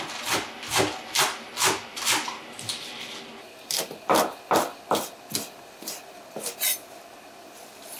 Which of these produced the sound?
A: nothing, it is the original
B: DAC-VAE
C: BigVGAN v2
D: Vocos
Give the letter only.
A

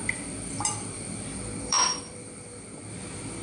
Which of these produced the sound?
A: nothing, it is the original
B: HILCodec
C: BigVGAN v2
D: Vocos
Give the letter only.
C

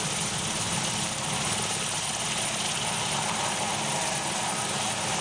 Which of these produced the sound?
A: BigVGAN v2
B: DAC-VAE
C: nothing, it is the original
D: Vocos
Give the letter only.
C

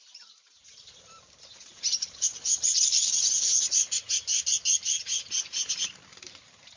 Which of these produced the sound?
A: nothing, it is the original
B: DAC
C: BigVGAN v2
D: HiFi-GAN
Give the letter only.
C